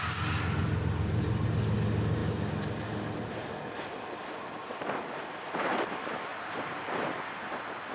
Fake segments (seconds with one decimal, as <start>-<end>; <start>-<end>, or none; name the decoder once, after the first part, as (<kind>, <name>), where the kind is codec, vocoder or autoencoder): 0.6-1.3 (vocoder, BigVGAN v2); 6.3-7.1